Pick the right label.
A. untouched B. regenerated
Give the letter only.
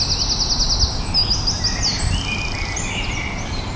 A